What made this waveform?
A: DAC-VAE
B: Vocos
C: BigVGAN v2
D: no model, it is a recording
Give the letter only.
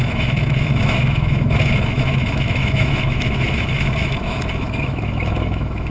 A